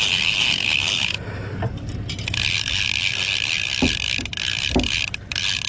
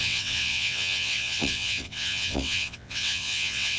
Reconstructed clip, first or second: second